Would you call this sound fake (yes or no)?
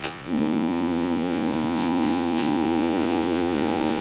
yes